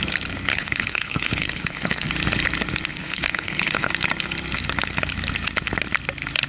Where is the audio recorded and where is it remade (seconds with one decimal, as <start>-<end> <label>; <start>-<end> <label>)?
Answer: 0.0-0.5 recorded; 0.5-2.1 remade; 2.1-2.9 recorded; 2.9-3.9 remade; 3.9-6.5 recorded